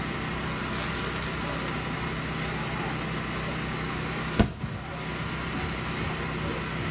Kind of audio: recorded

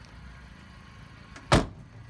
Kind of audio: recorded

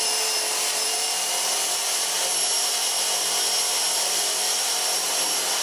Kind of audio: remade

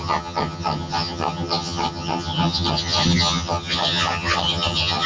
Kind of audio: remade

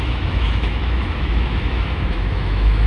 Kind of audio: remade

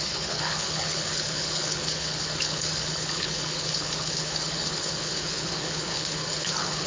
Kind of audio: remade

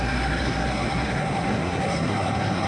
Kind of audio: remade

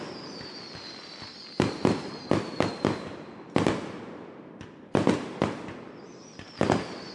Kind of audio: recorded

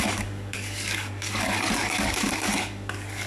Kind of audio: remade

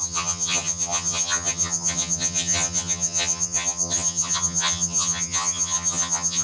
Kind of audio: remade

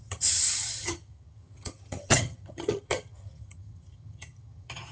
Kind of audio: remade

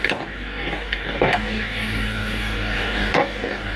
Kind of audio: remade